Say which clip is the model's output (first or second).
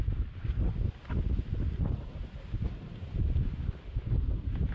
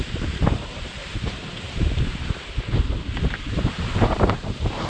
second